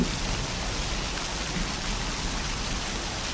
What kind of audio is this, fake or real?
real